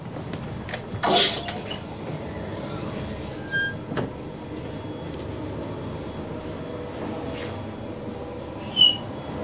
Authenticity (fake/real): real